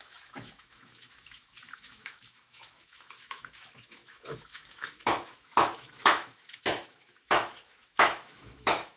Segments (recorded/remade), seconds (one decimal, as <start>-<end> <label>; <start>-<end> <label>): 0.0-9.0 remade